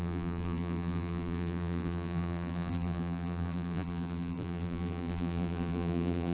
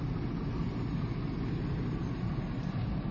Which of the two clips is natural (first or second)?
second